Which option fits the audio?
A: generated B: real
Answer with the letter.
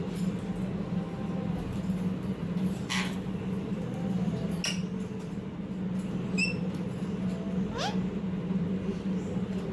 B